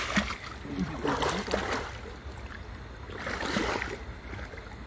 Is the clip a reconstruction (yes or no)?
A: no